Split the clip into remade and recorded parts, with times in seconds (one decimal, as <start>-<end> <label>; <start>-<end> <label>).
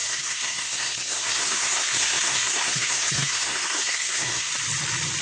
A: 0.0-4.5 remade; 4.5-5.2 recorded